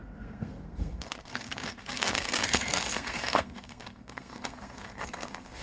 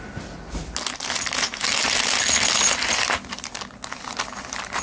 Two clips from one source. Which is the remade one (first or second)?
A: first